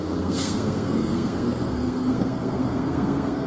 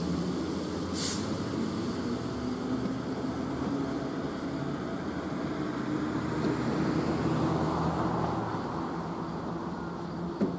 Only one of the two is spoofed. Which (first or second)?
first